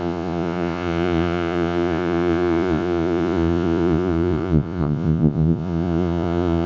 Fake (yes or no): yes